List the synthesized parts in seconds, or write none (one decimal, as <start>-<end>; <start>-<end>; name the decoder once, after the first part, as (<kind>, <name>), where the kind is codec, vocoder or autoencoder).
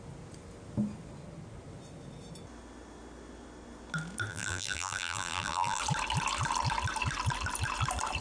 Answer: 4.3-5.8 (vocoder, BigVGAN v2)